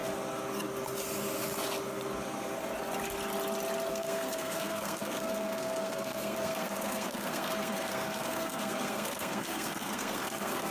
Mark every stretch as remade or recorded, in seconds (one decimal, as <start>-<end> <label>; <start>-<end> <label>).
0.0-3.9 recorded; 3.9-10.7 remade